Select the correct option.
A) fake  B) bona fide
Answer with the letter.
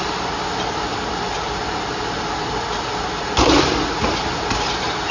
B